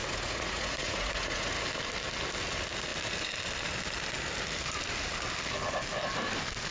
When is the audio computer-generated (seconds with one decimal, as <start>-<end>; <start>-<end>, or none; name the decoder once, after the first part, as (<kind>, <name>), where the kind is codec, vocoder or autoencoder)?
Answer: 0.0-1.6 (vocoder, Vocos)